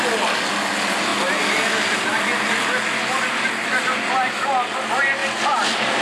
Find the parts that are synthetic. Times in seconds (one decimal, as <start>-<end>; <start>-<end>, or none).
none